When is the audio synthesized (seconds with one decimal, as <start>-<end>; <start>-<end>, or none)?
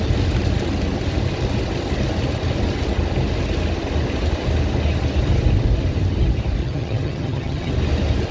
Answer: 6.6-7.7